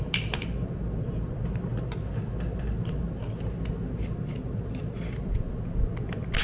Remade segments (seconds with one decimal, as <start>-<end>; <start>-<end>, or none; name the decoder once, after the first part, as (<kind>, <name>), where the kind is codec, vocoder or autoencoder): none